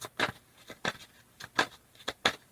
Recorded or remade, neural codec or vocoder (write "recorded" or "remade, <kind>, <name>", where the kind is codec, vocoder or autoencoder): recorded